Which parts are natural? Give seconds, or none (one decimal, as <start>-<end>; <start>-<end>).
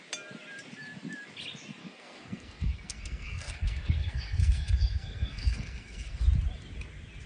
0.0-1.8; 6.2-7.3